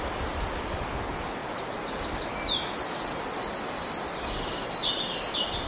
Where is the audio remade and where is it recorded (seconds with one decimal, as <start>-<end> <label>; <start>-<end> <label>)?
0.0-5.7 recorded